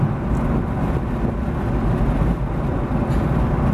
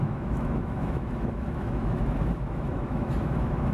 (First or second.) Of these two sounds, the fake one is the second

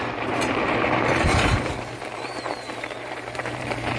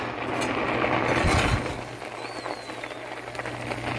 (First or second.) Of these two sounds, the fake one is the first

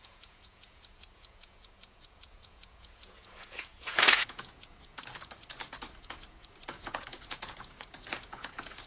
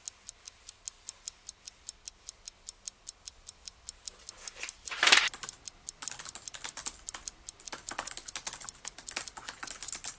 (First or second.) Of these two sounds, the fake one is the first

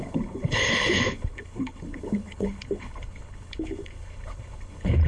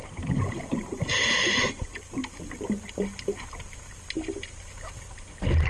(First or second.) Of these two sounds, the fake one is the first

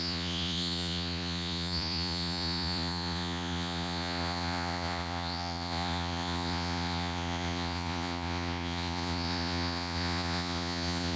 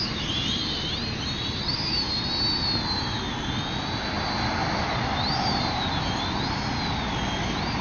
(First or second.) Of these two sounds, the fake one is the first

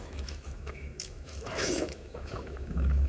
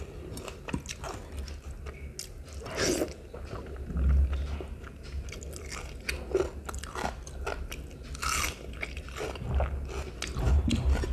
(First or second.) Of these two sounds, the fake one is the first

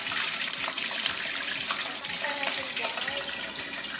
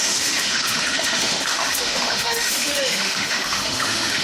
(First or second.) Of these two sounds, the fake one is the second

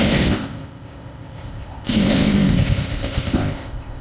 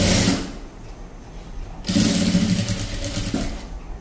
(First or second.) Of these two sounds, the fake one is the first